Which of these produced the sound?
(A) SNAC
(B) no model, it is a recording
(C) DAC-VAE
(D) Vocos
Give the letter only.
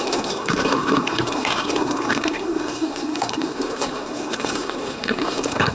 A